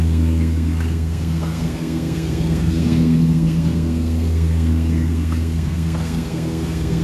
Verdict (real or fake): fake